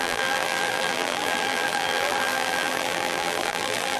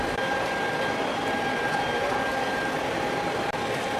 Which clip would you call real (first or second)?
second